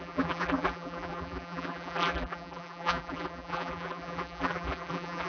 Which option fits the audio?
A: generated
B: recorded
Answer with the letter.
A